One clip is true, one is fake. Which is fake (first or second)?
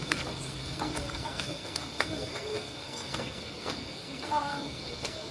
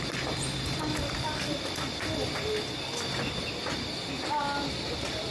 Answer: first